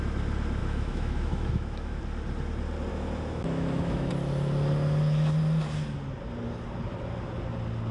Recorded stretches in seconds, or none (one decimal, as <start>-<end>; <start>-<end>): 0.0-0.6; 2.0-2.9; 4.1-7.9